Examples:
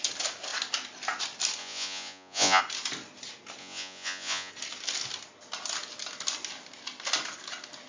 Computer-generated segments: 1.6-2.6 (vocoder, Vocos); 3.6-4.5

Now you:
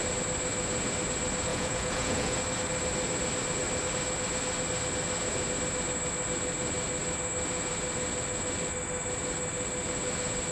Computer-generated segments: 1.5-2.4 (vocoder, Vocos)

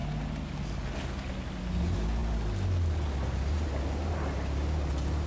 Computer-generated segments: none